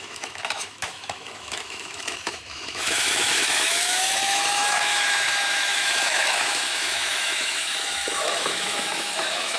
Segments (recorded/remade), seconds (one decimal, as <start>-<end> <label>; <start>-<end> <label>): 0.0-9.6 remade